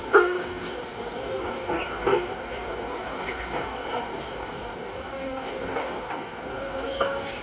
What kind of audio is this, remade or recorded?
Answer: remade